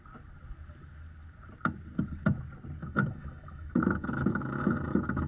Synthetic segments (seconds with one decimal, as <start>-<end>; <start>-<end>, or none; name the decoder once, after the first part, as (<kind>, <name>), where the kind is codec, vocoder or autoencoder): 2.8-5.3 (autoencoder, DAC-VAE)